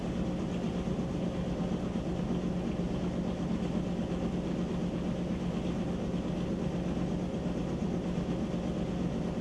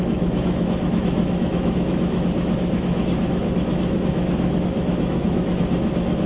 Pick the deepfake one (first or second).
second